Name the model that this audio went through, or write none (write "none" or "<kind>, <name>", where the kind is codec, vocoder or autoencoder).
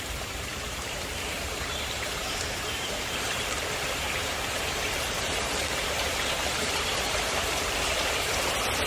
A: vocoder, BigVGAN v2